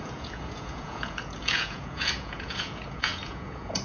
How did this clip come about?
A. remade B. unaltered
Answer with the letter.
A